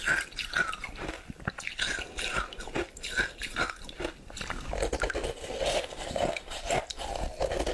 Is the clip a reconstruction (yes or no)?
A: no